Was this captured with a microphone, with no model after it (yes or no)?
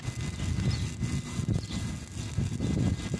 yes